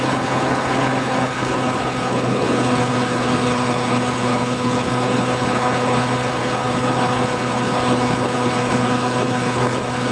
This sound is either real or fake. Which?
fake